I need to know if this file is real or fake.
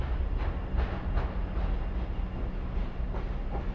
real